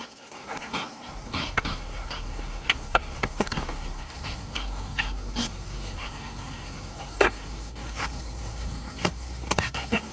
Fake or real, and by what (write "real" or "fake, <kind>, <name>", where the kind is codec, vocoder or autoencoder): fake, codec, SNAC